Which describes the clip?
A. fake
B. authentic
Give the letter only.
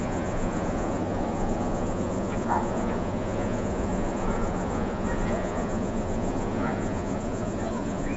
A